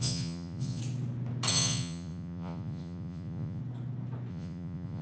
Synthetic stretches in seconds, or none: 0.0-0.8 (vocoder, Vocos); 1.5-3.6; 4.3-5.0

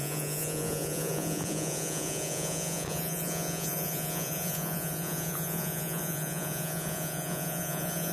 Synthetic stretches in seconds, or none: 0.0-8.1 (vocoder, Vocos)

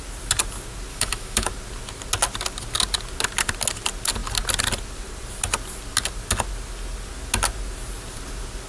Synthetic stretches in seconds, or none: 0.9-1.5 (autoencoder, DAC-VAE)

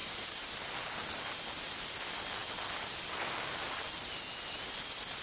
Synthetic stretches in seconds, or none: 0.0-0.5 (vocoder, BigVGAN v2)